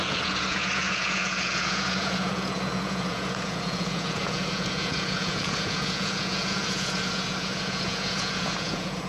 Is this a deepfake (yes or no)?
yes